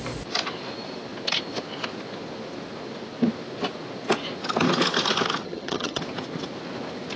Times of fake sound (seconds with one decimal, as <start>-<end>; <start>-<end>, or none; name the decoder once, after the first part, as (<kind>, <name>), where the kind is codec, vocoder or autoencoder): 5.4-6.0 (vocoder, HiFi-GAN)